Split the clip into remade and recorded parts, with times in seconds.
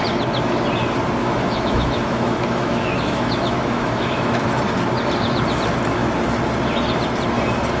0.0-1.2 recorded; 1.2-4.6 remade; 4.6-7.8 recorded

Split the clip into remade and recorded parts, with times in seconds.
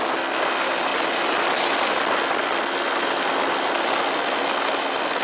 0.0-5.2 recorded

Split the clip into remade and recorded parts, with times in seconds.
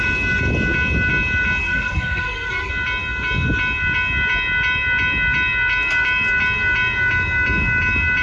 0.0-1.6 recorded; 1.6-2.7 remade; 2.7-8.2 recorded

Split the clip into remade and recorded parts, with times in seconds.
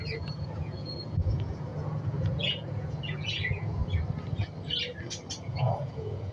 0.0-3.8 remade; 3.8-5.4 recorded; 5.4-6.3 remade